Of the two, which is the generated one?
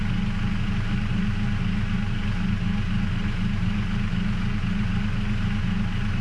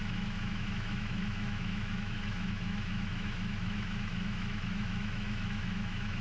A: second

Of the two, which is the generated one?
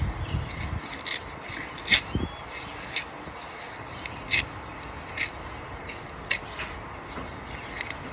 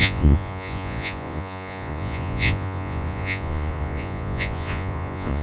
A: second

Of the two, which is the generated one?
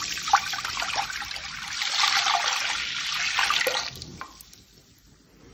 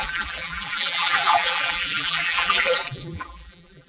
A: second